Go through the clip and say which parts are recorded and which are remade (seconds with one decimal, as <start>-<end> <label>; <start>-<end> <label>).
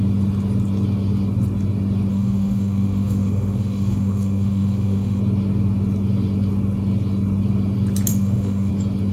0.0-2.1 recorded; 2.1-5.2 remade; 5.2-8.1 recorded; 8.1-8.7 remade; 8.7-9.1 recorded